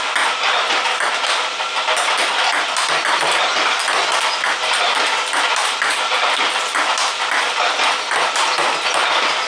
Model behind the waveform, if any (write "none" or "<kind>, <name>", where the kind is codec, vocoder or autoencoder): none